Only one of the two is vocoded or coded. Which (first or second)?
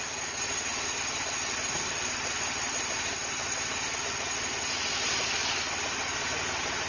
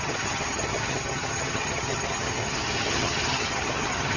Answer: second